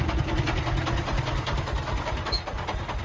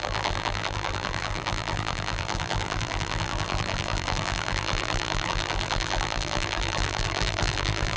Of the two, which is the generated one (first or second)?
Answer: second